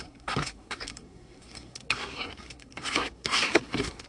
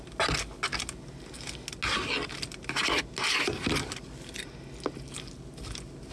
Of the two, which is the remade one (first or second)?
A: first